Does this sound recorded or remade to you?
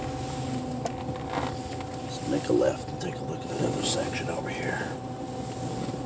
recorded